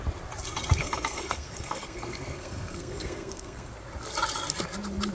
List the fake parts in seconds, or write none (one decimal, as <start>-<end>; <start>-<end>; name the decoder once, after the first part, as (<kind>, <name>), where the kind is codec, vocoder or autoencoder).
0.8-3.7 (codec, SNAC)